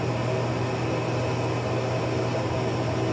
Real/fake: real